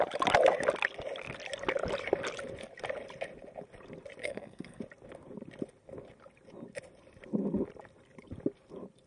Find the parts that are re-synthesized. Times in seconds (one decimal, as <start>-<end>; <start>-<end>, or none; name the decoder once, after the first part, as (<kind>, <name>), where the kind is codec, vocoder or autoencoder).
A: 4.2-4.8 (codec, SNAC)